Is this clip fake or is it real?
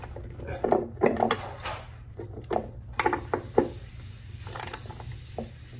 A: real